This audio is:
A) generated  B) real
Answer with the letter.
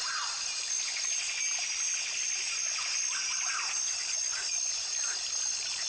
B